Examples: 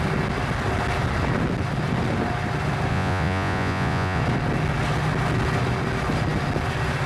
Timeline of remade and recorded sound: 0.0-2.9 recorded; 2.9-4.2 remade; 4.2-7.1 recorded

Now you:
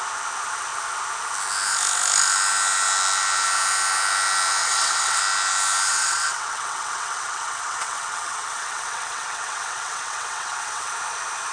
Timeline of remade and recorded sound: 0.0-4.6 recorded; 4.6-5.2 remade; 5.2-5.9 recorded; 5.9-10.9 remade; 10.9-11.5 recorded

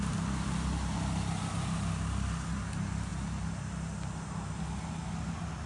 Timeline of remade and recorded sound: 0.0-5.7 recorded

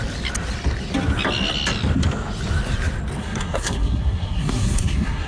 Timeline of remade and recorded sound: 0.0-3.2 recorded; 3.2-5.3 remade

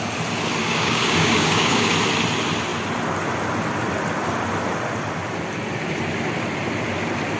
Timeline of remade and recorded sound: 0.0-0.6 recorded; 0.6-1.9 remade; 1.9-7.4 recorded

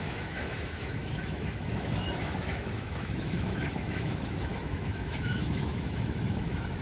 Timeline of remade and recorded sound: 0.0-6.8 remade

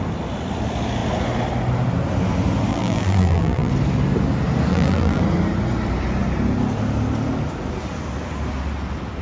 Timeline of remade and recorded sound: 0.0-2.7 recorded; 2.7-3.7 remade; 3.7-4.7 recorded; 4.7-5.2 remade; 5.2-9.2 recorded